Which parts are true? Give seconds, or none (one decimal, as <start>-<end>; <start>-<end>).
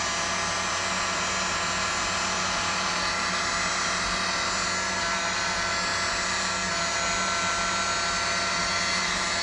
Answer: 0.0-9.4